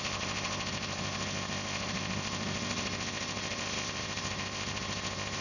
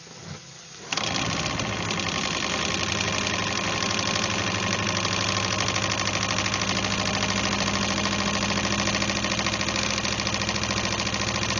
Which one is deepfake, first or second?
first